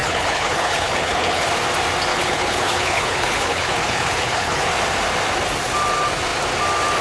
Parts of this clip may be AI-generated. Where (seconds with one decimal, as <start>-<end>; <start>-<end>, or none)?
0.0-1.5; 2.1-4.7